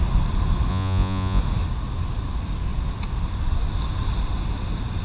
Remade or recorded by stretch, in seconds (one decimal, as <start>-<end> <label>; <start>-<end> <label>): 0.0-0.7 recorded; 0.7-1.4 remade; 1.4-5.0 recorded